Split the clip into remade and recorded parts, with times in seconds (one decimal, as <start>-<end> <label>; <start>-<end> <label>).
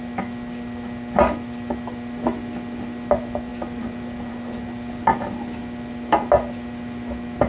0.0-7.5 recorded